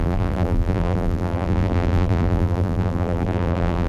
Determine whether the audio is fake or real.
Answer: fake